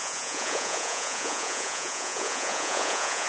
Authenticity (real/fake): fake